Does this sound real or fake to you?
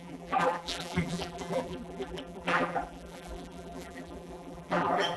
fake